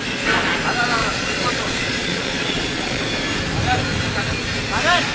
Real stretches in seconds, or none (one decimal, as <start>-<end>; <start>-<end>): 0.0-1.0; 3.0-5.1